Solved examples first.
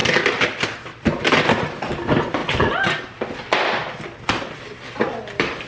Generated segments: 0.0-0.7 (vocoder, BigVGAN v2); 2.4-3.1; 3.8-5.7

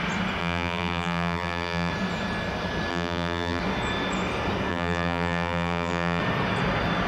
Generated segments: 0.4-1.9 (vocoder, BigVGAN v2); 2.9-3.6; 4.7-6.2

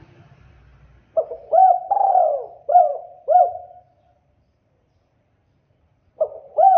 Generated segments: 0.0-0.7 (vocoder, BigVGAN v2); 1.4-6.8

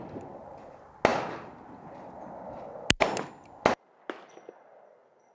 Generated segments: none

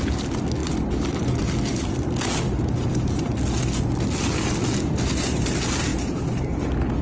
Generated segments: 5.9-6.6 (vocoder, BigVGAN v2)

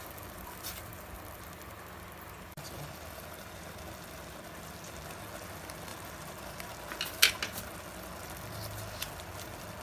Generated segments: none

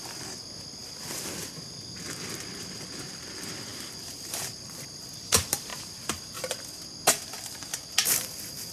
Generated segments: 0.0-0.4 (vocoder, BigVGAN v2); 2.7-8.7